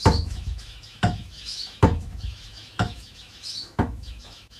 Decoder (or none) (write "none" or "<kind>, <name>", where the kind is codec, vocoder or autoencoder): autoencoder, DAC-VAE